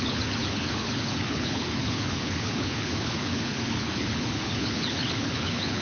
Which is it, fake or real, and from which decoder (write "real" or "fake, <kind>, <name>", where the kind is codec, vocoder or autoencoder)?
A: fake, codec, HILCodec